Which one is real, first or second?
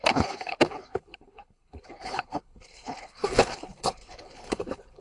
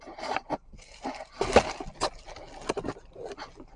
second